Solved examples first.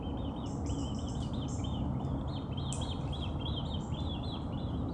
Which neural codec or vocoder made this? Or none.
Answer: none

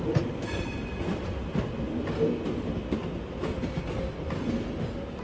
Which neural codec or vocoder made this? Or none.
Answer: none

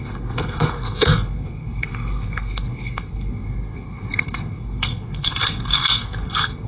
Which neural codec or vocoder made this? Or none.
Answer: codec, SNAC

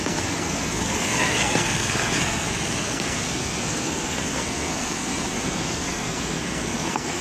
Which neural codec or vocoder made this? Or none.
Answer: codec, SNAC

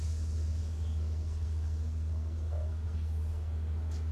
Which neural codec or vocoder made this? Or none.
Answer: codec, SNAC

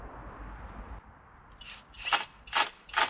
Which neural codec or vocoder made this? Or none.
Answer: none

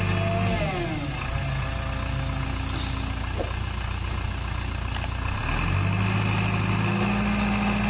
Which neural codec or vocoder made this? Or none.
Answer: none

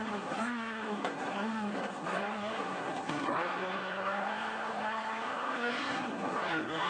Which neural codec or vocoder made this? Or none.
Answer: codec, SNAC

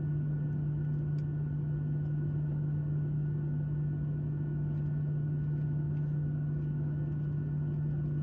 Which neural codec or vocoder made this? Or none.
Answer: none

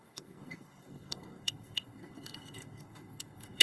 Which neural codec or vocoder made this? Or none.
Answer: codec, SNAC